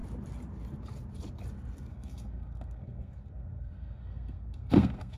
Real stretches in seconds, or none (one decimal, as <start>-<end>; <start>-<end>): 0.0-1.9